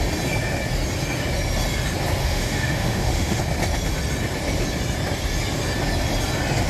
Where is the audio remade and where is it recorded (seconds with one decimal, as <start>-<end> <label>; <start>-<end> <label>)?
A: 0.0-2.2 recorded; 2.2-3.4 remade; 3.4-6.7 recorded